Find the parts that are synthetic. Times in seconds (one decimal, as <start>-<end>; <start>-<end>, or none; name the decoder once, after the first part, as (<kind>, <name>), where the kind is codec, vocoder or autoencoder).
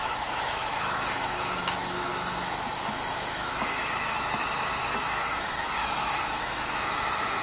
0.0-2.1 (autoencoder, DAC-VAE); 3.1-7.4